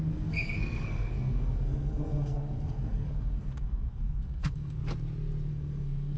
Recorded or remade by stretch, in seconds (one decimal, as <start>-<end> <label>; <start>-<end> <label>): 0.0-4.8 remade; 4.8-5.5 recorded; 5.5-6.2 remade